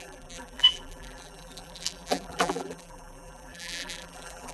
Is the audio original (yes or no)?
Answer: no